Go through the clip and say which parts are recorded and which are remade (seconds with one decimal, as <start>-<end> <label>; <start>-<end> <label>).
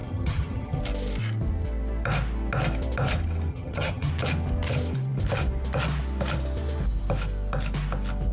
0.0-0.8 remade; 0.8-3.5 recorded; 3.5-4.1 remade; 4.1-8.3 recorded